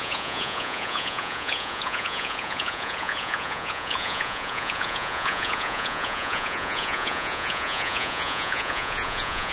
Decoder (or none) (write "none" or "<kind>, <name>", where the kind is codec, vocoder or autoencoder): vocoder, Vocos